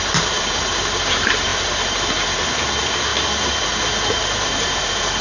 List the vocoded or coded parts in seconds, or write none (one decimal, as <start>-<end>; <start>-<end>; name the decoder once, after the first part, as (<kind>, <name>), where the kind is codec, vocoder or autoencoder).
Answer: 0.0-3.1 (vocoder, BigVGAN v2); 4.1-5.2